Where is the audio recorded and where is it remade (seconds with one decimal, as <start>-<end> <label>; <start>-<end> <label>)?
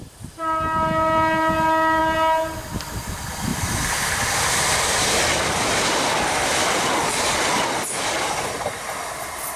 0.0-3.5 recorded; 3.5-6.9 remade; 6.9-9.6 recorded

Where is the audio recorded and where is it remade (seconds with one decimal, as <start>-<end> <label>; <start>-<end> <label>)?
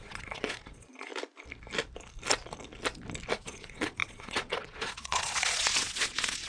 0.0-1.1 remade; 1.1-3.3 recorded; 3.3-6.5 remade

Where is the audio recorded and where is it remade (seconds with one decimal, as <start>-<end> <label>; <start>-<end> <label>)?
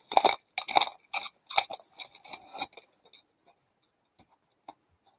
0.0-5.2 recorded